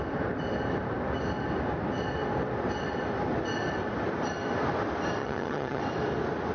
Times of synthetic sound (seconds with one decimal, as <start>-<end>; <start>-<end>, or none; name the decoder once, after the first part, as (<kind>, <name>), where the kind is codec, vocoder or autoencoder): 5.2-5.8 (vocoder, HiFi-GAN)